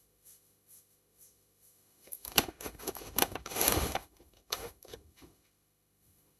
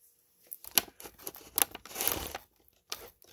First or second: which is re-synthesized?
first